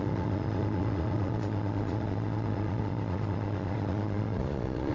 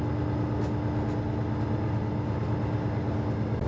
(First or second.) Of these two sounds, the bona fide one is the second